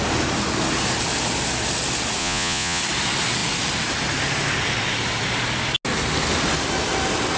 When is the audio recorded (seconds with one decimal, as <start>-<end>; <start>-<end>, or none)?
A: 0.0-2.2; 2.8-7.4